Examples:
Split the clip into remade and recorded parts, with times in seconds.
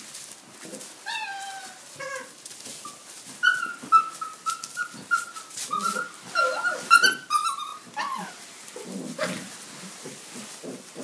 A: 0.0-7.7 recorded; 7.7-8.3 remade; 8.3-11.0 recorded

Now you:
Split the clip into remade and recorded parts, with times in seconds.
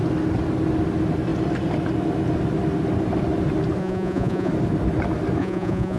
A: 0.0-3.8 recorded; 3.8-4.5 remade; 4.5-5.4 recorded; 5.4-6.0 remade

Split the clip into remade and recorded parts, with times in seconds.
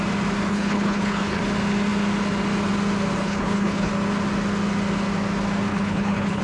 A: 0.0-0.5 recorded; 0.5-1.4 remade; 1.4-3.2 recorded; 3.2-3.9 remade; 3.9-5.7 recorded; 5.7-6.4 remade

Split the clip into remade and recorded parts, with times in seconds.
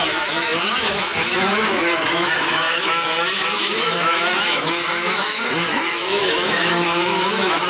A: 0.0-7.7 remade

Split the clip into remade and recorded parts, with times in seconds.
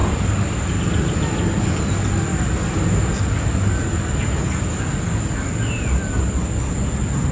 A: 0.0-7.3 recorded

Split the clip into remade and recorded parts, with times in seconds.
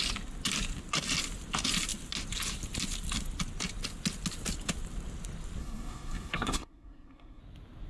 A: 0.0-5.6 recorded; 5.6-7.4 remade; 7.4-7.9 recorded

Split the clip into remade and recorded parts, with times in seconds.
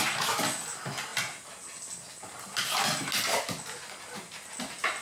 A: 0.0-5.0 recorded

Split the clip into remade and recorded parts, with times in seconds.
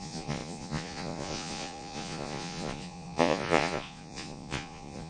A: 0.0-5.1 remade